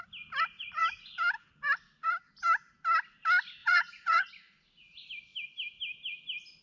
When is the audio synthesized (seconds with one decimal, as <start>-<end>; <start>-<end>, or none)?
3.6-4.3